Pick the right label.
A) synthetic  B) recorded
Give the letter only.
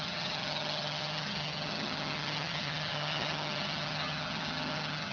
A